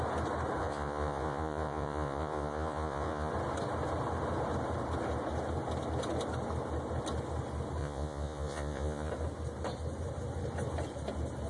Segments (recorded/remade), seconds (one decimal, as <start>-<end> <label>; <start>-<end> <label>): 0.0-0.6 recorded; 0.6-3.3 remade; 3.3-7.8 recorded; 7.8-9.1 remade; 9.1-11.5 recorded